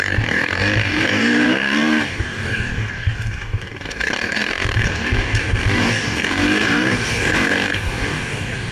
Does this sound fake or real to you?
fake